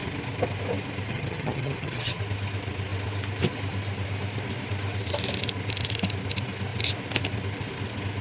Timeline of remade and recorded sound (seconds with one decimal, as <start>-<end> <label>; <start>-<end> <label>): 0.0-1.1 recorded; 1.1-2.2 remade; 2.2-8.2 recorded

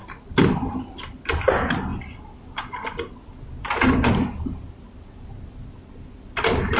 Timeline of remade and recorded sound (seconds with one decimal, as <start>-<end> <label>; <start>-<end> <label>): 0.0-6.8 recorded

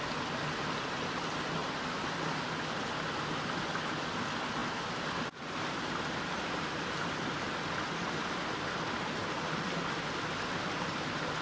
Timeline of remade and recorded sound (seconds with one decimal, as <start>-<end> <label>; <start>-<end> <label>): 0.0-11.4 recorded

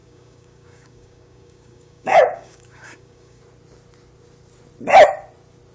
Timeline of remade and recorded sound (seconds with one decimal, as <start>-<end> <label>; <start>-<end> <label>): 0.0-3.4 remade; 3.4-5.7 recorded

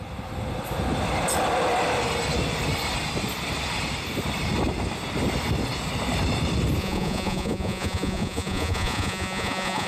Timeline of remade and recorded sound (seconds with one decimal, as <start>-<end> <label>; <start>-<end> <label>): 0.0-6.8 recorded; 6.8-9.9 remade

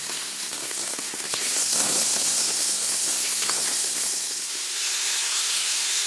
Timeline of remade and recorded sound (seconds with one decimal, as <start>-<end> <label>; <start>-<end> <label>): 0.0-6.1 remade

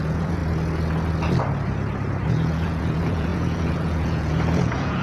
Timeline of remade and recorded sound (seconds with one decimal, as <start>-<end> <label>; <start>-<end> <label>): 0.0-0.4 remade; 0.4-2.3 recorded; 2.3-5.0 remade